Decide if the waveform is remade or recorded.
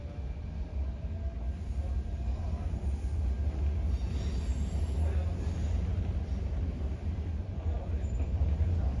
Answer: recorded